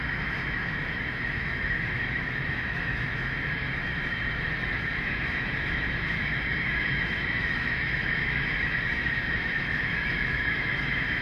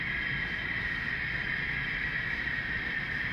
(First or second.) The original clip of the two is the second